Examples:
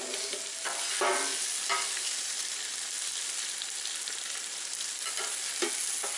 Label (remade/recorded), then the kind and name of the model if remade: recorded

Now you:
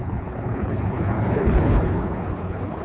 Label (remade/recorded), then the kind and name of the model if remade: remade, codec, HILCodec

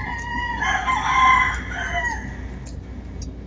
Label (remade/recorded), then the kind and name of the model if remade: recorded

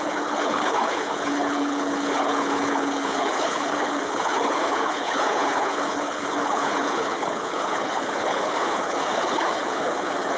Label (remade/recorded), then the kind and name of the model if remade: remade, codec, HILCodec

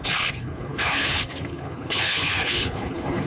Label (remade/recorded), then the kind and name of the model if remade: remade, codec, HILCodec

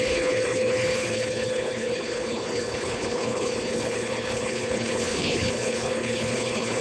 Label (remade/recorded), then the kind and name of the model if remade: remade, codec, HILCodec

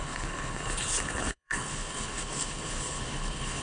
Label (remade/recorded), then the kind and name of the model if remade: remade, codec, HILCodec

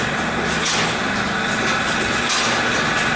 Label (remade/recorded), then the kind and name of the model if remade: recorded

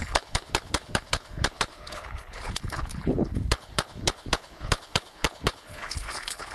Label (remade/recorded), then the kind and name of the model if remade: remade, codec, HILCodec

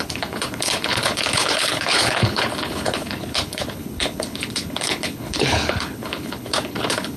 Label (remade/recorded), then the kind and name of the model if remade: remade, codec, HILCodec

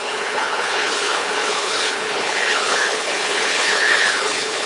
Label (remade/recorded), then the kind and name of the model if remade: remade, codec, HILCodec